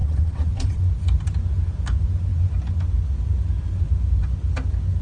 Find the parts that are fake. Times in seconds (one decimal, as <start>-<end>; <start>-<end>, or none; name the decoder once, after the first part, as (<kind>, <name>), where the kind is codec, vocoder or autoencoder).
0.0-0.8 (vocoder, WaveNeXt)

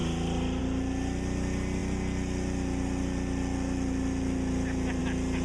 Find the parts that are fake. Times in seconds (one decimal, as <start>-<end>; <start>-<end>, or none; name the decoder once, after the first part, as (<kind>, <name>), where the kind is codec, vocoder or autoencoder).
none

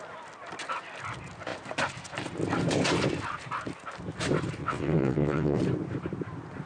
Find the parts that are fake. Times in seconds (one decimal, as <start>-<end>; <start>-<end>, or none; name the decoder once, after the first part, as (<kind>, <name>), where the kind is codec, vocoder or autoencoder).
4.6-5.6 (vocoder, WaveNeXt)

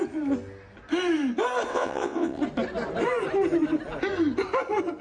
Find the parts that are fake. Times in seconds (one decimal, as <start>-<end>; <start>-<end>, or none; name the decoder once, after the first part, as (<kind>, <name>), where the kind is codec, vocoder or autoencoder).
1.7-2.4 (vocoder, WaveNeXt)